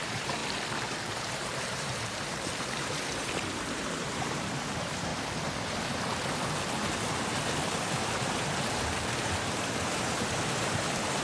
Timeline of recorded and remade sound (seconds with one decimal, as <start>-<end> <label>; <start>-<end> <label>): 0.0-0.4 remade; 0.4-1.2 recorded; 1.2-5.1 remade; 5.1-8.1 recorded; 8.1-11.2 remade